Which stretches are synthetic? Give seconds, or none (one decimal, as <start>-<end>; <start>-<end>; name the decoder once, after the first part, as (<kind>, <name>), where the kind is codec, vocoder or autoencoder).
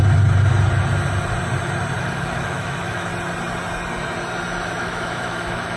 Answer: 2.0-3.1 (autoencoder, DAC-VAE); 4.8-5.8